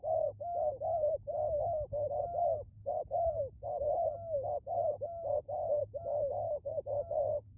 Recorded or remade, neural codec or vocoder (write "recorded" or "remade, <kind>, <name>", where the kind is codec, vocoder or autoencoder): recorded